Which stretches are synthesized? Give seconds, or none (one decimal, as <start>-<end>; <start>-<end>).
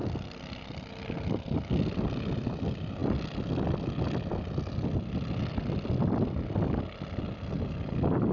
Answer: none